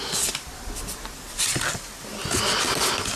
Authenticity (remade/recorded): recorded